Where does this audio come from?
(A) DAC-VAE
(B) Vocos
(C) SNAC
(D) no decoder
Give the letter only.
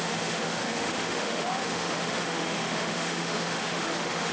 A